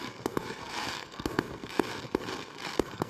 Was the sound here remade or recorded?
remade